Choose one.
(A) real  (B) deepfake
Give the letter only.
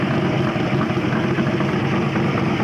A